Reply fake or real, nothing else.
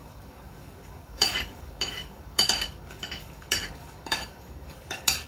fake